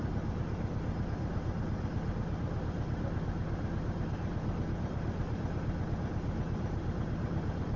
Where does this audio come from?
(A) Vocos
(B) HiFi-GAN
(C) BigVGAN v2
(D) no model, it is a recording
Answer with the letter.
D